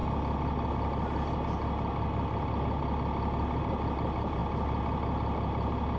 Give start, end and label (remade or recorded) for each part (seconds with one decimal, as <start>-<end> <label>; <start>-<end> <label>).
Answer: 0.0-3.6 recorded; 3.6-4.4 remade; 4.4-6.0 recorded